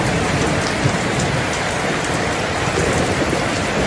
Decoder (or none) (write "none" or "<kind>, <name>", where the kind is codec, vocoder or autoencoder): vocoder, BigVGAN v2